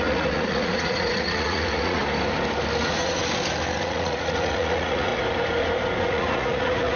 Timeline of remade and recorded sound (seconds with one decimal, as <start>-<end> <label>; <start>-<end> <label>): 0.0-2.0 remade; 2.0-2.8 recorded; 2.8-3.2 remade; 3.2-3.8 recorded; 3.8-5.1 remade; 5.1-6.1 recorded; 6.1-7.0 remade